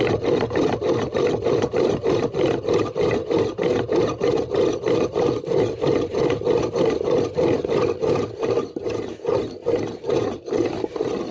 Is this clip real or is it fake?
real